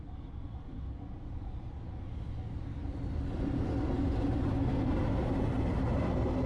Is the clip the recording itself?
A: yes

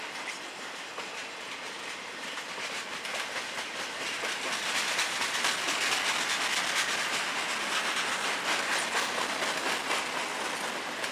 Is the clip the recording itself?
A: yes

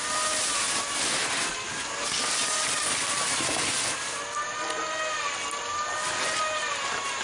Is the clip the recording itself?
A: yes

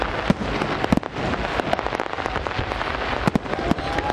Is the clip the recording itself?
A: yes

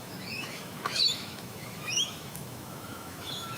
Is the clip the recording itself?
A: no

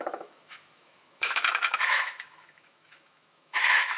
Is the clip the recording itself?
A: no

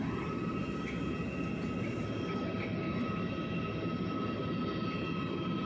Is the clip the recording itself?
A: yes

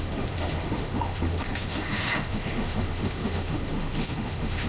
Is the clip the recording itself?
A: no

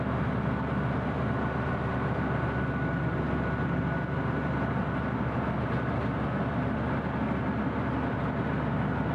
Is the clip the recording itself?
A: yes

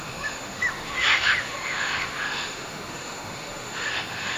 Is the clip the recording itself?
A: no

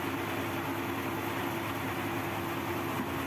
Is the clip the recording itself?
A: yes